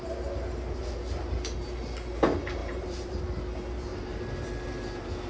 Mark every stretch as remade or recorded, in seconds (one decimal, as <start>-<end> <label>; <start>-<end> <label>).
0.0-2.6 recorded; 2.6-3.2 remade; 3.2-5.3 recorded